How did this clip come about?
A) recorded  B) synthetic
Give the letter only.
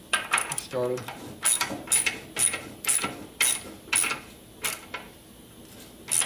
A